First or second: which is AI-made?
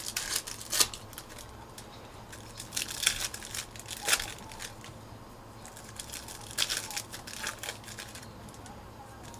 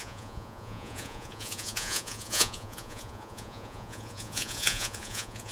second